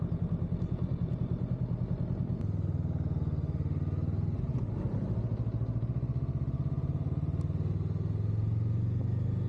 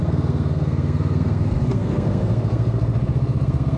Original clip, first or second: first